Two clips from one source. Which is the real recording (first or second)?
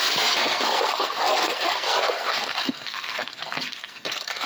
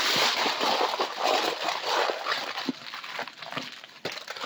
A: second